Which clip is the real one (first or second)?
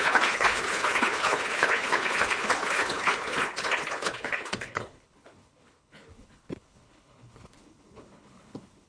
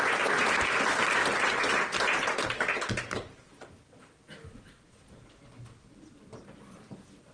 second